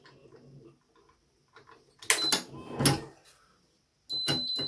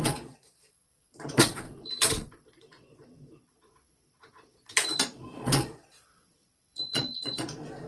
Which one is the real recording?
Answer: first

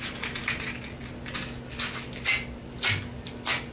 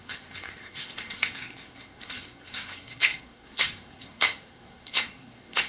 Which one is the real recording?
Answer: first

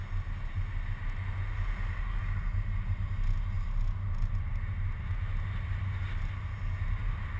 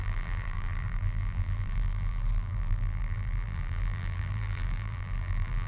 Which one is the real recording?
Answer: first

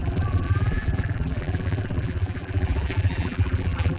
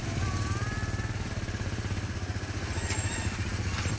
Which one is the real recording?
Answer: second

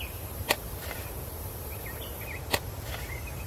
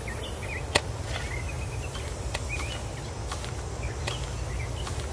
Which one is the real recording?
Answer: second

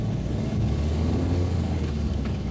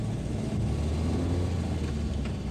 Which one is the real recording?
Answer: second